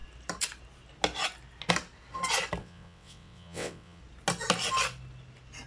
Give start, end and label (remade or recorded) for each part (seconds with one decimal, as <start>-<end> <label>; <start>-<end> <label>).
0.0-2.6 recorded; 2.6-4.0 remade; 4.0-5.7 recorded